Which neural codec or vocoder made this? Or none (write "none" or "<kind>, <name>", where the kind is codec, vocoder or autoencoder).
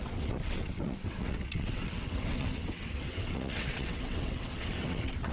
vocoder, WaveNeXt